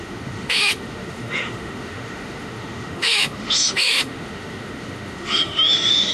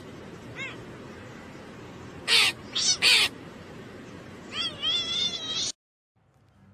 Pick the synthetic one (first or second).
first